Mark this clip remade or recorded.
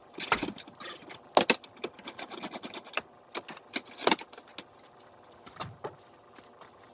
recorded